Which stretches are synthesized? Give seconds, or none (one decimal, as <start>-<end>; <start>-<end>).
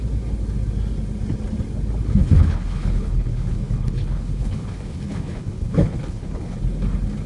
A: 2.2-6.6